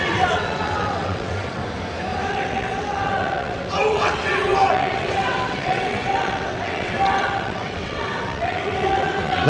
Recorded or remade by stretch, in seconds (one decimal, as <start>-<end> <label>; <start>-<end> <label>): 0.0-1.6 remade; 1.6-2.3 recorded; 2.3-9.5 remade